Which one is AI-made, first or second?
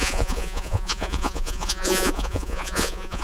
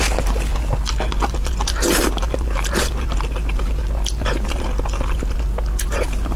first